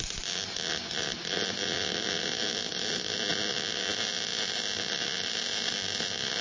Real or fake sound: real